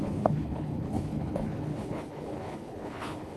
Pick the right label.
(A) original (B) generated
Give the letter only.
B